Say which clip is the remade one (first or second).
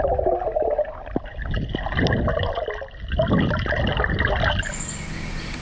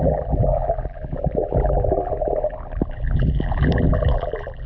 second